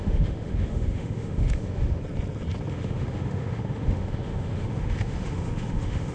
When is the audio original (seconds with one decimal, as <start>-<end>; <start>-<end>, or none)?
2.0-2.7